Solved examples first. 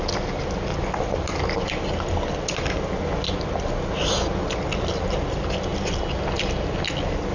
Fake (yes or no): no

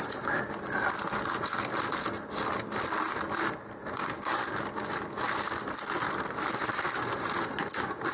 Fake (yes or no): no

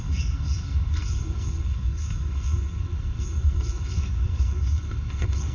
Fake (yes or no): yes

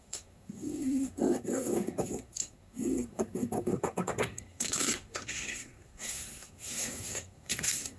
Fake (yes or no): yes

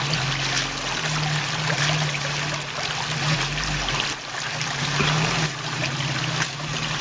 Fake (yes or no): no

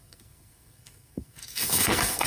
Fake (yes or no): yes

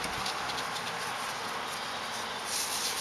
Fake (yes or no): no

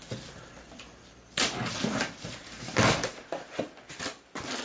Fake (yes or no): no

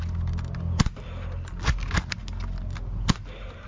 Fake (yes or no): no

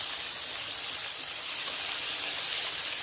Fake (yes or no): no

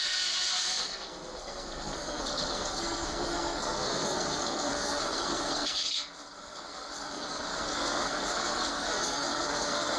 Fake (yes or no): yes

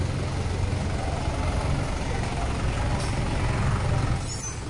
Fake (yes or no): no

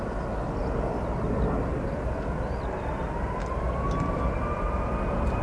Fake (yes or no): no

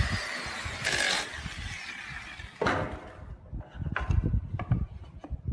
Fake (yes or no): no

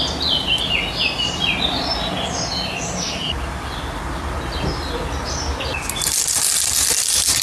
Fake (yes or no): no